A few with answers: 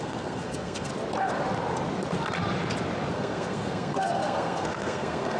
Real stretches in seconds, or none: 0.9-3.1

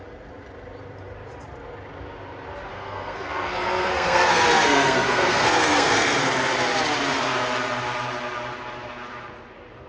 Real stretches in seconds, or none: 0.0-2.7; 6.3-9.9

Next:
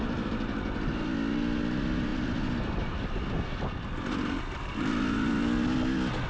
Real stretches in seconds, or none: 0.0-6.3

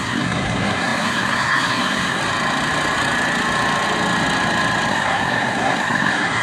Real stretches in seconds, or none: 2.2-4.9